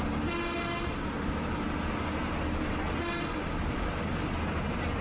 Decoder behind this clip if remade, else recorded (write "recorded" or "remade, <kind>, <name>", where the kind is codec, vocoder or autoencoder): recorded